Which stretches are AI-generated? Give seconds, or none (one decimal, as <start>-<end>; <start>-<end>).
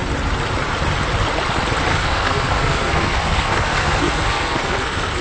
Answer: 1.9-5.2